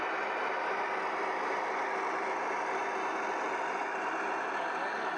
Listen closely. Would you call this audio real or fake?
real